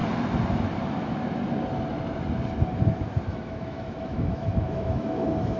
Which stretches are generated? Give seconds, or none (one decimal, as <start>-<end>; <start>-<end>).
3.3-5.6